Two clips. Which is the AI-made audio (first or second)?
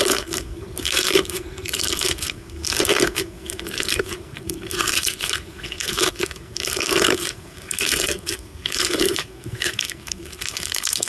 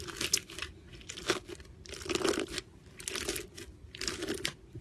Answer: first